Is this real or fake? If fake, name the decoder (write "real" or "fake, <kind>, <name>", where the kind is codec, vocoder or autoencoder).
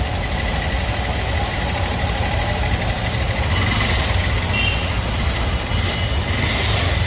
real